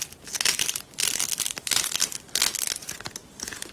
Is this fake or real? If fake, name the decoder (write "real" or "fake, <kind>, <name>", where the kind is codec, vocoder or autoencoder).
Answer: real